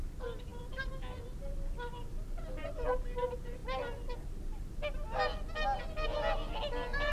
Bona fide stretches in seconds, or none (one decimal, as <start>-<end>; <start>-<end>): 0.0-7.1